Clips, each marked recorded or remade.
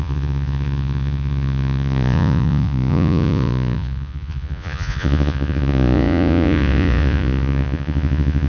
remade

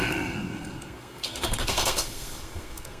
remade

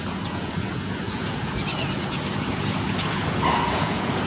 remade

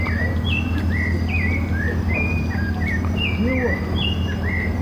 recorded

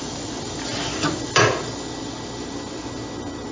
recorded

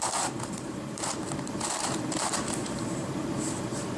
remade